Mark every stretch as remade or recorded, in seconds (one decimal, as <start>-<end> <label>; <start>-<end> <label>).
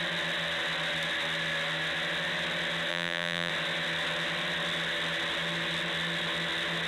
0.0-2.9 recorded; 2.9-3.5 remade; 3.5-6.9 recorded